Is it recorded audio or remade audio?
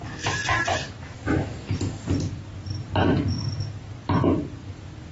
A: recorded